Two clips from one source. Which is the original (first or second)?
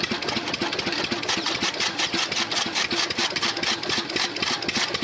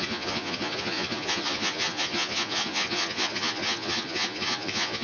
first